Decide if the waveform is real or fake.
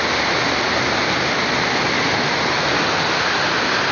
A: real